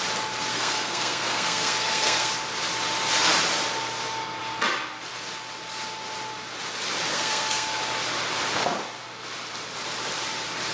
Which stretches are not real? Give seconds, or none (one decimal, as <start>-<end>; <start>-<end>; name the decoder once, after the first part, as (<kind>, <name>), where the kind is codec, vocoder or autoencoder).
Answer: 0.5-2.3 (codec, SNAC); 7.1-7.8